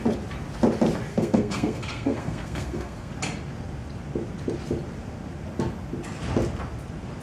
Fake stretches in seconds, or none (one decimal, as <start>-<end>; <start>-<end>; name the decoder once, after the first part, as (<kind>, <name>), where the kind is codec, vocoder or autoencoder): 1.1-3.1 (codec, SNAC)